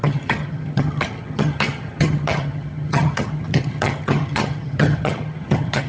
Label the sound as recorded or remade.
remade